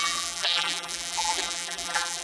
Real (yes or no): no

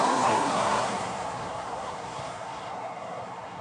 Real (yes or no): no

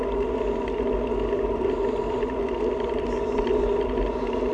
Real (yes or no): yes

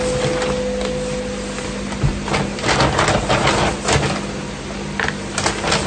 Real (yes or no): yes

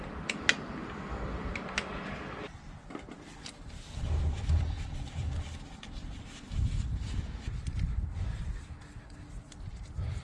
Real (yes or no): yes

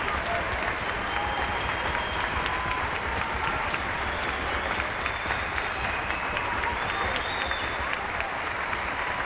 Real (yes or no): yes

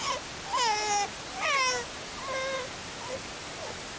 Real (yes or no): yes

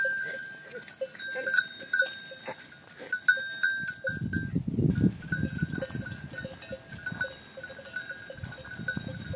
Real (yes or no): yes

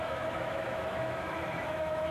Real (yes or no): no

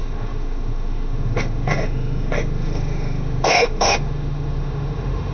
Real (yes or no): no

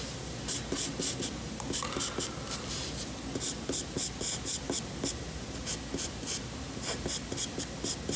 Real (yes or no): yes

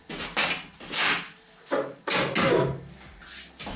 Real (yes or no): yes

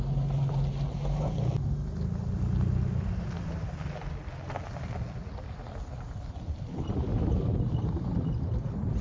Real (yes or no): yes